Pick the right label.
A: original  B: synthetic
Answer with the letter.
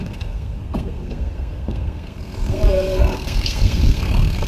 B